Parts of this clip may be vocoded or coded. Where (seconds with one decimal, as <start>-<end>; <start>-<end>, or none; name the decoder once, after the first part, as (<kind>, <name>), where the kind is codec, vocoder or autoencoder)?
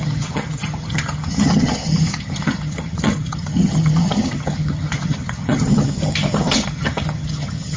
0.0-7.8 (vocoder, HiFi-GAN)